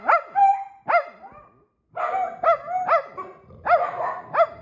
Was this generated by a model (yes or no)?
no